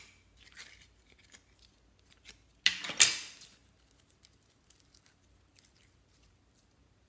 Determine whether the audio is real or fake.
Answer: real